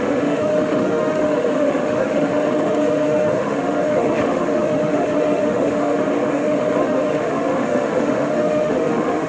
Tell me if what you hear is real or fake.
fake